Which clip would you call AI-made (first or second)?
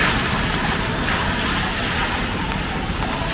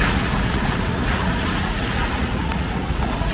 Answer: second